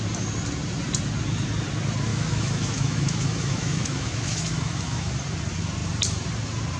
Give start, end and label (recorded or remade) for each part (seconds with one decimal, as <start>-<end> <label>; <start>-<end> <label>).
0.0-2.1 recorded; 2.1-5.1 remade; 5.1-6.8 recorded